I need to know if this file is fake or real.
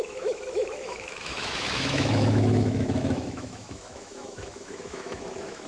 fake